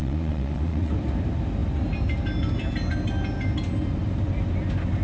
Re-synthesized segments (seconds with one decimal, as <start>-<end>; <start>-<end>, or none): 0.0-0.9